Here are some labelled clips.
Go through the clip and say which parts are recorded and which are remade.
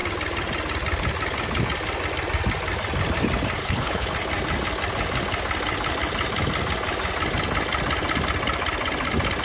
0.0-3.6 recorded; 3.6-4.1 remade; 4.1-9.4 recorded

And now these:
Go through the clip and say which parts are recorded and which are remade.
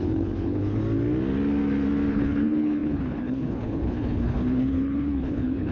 0.0-0.8 remade; 0.8-2.1 recorded; 2.1-5.7 remade